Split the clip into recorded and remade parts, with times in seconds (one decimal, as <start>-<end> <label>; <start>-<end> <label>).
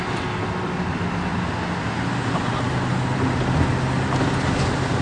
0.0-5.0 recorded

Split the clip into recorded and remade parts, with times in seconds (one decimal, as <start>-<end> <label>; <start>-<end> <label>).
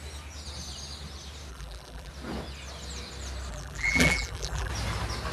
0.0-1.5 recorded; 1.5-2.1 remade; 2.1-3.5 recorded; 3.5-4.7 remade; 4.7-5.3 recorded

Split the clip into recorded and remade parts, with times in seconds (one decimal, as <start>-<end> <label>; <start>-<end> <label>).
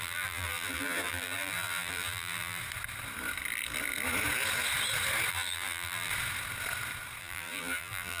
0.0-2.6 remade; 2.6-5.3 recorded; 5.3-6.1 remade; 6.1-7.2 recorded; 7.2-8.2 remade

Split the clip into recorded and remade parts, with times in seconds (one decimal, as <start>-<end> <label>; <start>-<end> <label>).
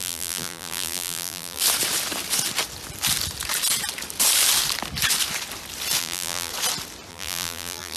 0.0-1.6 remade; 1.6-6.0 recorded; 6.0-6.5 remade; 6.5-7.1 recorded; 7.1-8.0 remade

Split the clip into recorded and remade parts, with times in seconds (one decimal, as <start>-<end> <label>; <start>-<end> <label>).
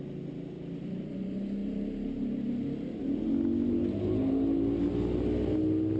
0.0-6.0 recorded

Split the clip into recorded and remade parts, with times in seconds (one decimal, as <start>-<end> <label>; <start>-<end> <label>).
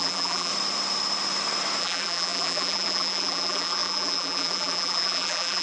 0.0-0.5 remade; 0.5-1.8 recorded; 1.8-5.6 remade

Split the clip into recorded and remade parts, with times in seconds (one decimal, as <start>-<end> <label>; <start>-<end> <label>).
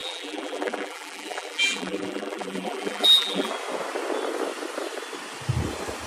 0.0-3.5 remade; 3.5-6.1 recorded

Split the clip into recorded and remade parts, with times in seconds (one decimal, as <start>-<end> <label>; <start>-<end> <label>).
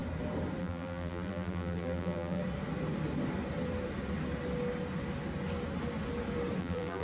0.0-0.6 recorded; 0.6-2.4 remade; 2.4-6.6 recorded; 6.6-7.0 remade